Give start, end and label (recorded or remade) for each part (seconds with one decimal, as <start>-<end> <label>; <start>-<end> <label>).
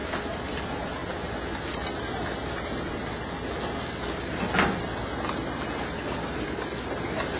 0.0-7.4 recorded